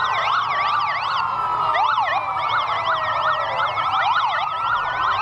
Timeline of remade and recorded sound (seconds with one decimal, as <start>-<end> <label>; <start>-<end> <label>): 0.0-5.2 recorded